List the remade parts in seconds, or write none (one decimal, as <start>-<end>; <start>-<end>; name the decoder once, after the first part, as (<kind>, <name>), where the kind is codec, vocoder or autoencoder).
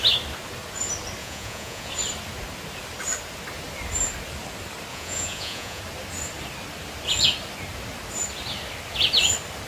1.2-1.9 (vocoder, Vocos); 4.9-5.8